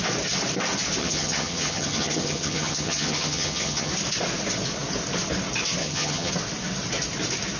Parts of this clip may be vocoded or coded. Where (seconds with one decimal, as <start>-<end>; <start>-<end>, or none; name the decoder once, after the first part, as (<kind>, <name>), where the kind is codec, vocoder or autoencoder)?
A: 1.0-3.9 (vocoder, HiFi-GAN); 5.8-6.3